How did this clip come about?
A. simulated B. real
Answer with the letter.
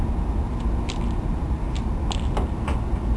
B